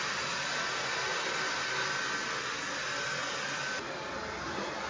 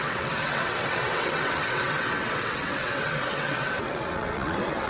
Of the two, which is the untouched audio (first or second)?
first